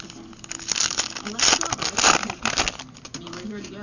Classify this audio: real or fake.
real